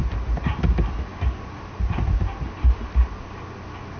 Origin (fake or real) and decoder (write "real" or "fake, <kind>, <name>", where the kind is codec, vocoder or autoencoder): real